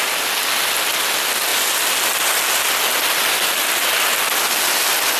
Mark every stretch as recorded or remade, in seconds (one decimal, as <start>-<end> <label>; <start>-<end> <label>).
0.0-5.2 recorded